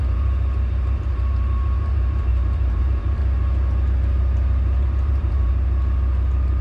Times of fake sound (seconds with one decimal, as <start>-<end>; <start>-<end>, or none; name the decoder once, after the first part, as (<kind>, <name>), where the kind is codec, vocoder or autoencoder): 0.0-3.2 (vocoder, BigVGAN v2); 4.8-5.5